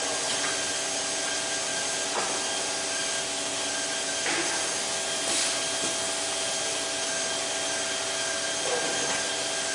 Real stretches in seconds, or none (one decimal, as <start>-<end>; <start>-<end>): 0.0-9.7